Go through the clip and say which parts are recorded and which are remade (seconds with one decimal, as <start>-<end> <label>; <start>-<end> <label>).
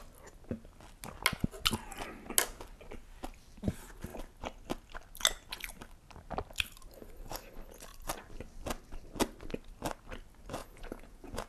0.0-10.6 recorded; 10.6-11.5 remade